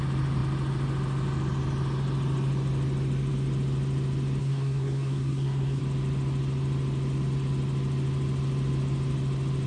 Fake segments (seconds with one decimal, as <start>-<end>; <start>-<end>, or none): 4.4-5.8